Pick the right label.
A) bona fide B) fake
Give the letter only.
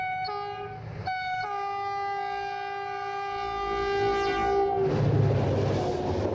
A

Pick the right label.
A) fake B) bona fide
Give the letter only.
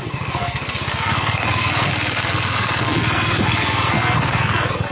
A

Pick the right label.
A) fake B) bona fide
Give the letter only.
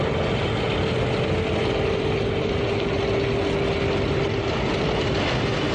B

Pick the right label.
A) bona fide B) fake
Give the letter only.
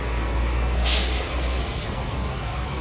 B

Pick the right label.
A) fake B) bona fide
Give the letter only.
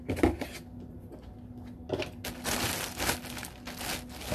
B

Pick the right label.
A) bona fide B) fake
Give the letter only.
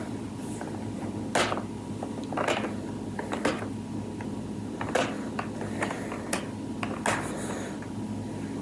A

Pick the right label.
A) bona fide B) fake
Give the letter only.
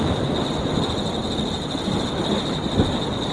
A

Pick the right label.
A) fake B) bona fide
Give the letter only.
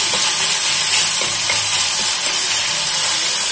B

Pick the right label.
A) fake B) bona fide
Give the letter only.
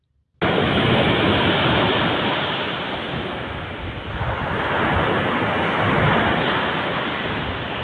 B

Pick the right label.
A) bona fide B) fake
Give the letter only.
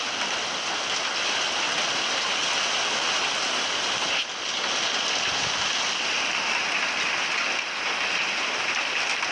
A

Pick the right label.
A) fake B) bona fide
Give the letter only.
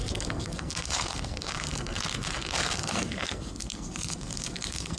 A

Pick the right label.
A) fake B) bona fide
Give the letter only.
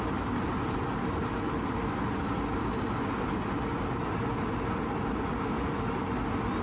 B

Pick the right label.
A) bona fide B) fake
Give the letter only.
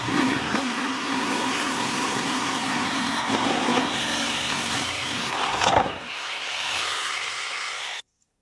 B